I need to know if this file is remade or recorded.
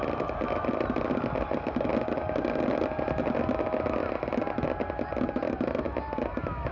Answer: recorded